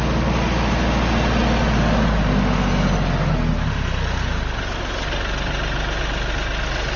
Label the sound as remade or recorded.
recorded